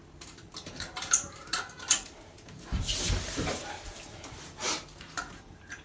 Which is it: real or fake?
fake